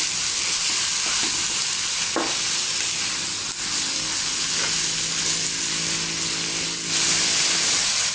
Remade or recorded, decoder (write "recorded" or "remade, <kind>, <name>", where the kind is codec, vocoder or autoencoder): recorded